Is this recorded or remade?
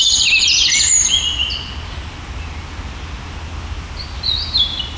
recorded